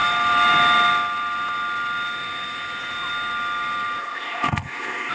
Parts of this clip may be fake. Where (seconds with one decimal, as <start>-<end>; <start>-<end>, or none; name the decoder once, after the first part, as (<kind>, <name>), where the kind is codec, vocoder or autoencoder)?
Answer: 4.0-5.1 (codec, ZipCodec)

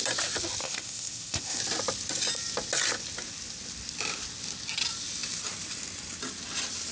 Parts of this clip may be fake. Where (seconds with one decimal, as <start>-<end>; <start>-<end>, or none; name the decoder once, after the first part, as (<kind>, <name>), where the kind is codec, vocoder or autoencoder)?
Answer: 0.6-1.6 (codec, ZipCodec)

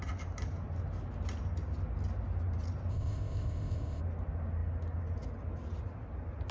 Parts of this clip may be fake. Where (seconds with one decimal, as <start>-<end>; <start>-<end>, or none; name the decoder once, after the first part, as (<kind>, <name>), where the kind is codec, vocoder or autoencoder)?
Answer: 2.9-4.0 (codec, ZipCodec)

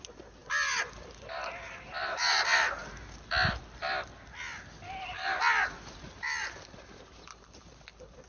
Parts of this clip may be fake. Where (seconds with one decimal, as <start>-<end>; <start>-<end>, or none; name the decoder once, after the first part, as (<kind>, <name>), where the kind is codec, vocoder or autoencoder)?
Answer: none